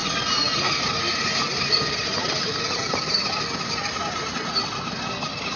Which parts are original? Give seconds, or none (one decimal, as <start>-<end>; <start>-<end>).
0.0-5.6